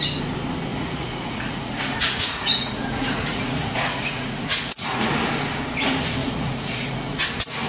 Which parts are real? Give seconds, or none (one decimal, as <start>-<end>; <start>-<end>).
0.0-0.7; 5.1-6.2; 7.2-7.7